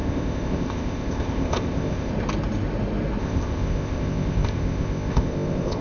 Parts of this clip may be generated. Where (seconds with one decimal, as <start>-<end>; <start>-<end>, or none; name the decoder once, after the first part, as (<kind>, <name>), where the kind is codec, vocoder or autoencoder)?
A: 0.0-2.1 (codec, ZipCodec); 3.2-5.8